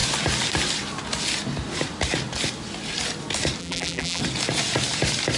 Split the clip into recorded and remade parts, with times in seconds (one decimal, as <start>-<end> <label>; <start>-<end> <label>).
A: 0.0-3.6 recorded; 3.6-4.2 remade; 4.2-5.4 recorded